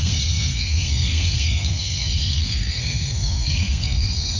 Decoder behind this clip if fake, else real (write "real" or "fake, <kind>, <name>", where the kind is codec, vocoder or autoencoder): fake, codec, SNAC